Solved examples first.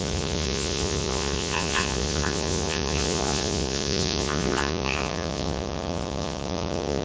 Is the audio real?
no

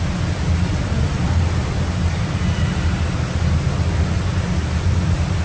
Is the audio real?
yes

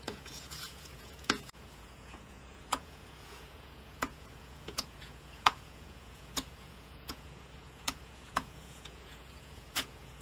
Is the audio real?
no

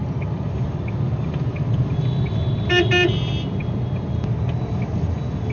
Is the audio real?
yes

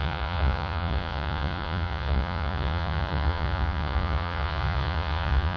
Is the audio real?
no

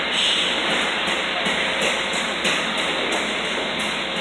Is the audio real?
yes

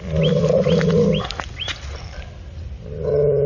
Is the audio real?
yes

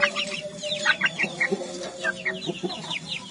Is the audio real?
yes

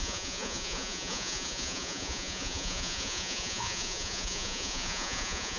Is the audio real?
no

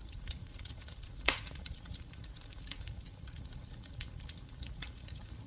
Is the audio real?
no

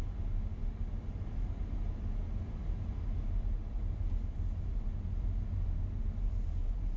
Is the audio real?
yes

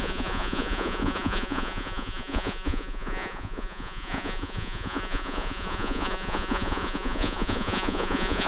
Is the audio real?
no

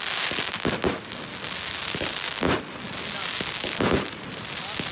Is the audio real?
yes